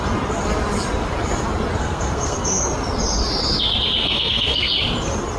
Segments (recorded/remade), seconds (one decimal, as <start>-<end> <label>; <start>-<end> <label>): 0.0-1.8 recorded; 1.8-2.6 remade; 2.6-4.0 recorded; 4.0-4.7 remade; 4.7-5.4 recorded